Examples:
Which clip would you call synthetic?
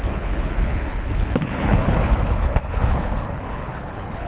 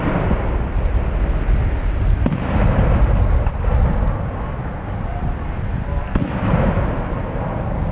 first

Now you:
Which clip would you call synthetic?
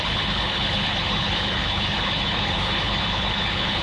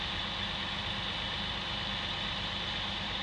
first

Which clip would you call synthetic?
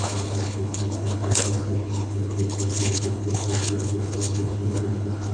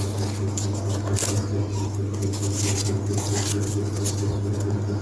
first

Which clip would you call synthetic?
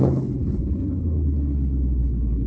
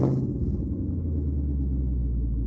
first